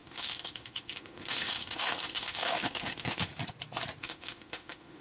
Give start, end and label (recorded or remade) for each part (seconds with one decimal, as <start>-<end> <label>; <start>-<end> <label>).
0.0-3.3 remade; 3.3-4.0 recorded; 4.0-5.0 remade